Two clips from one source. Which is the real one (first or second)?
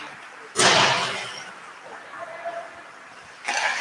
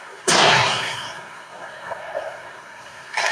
first